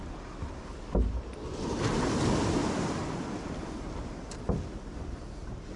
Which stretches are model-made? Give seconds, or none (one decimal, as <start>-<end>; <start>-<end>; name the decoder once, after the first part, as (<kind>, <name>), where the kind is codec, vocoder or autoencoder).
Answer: 1.5-2.2 (vocoder, BigVGAN v2); 2.6-5.8